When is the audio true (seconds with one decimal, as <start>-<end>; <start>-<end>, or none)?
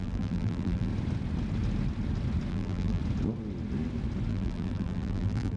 0.9-2.5; 3.0-4.3